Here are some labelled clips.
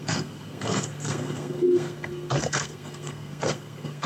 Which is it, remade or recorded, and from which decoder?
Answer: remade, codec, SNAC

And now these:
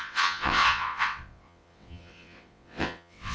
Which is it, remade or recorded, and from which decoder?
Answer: remade, vocoder, WaveNeXt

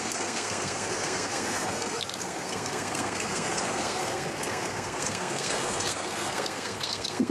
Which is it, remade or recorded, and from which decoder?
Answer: remade, codec, SNAC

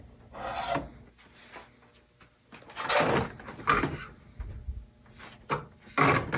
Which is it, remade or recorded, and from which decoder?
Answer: recorded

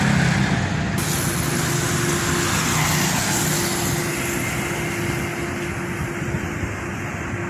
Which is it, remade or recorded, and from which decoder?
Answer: recorded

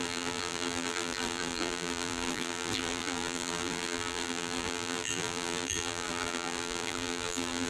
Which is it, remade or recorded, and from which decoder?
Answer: remade, vocoder, BigVGAN v2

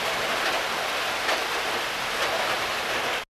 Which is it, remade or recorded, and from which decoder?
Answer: recorded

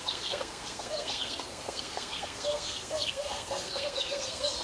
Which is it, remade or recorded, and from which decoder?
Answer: remade, codec, SNAC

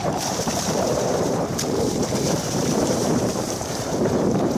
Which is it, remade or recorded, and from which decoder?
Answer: remade, vocoder, BigVGAN v2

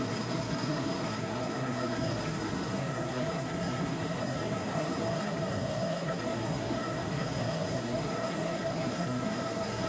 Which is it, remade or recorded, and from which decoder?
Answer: remade, codec, SNAC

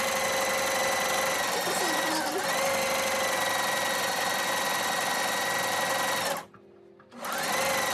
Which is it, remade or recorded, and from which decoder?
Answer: recorded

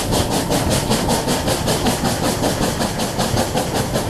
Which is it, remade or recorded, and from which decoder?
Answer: recorded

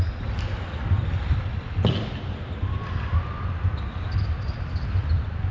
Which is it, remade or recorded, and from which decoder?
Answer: recorded